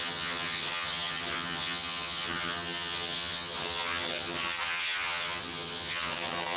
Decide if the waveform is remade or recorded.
remade